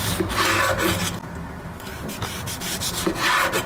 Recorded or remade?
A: recorded